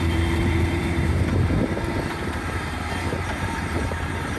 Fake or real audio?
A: fake